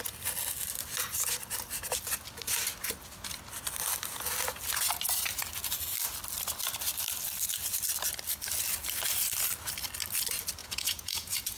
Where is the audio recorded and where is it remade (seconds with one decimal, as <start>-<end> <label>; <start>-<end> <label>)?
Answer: 0.0-10.6 recorded; 10.6-11.6 remade